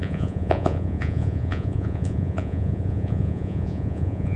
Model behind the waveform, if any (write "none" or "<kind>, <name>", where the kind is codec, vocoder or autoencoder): vocoder, Vocos